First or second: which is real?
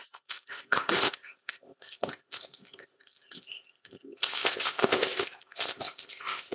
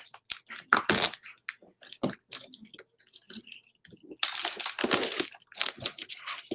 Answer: second